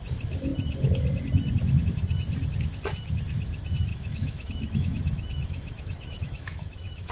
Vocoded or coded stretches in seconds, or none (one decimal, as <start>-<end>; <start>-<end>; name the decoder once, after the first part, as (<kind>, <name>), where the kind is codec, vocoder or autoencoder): 3.9-7.1 (autoencoder, DAC-VAE)